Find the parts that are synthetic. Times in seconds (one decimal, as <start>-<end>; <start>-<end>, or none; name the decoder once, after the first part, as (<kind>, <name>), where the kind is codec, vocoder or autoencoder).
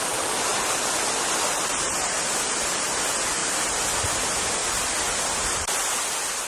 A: 4.6-6.1 (vocoder, BigVGAN v2)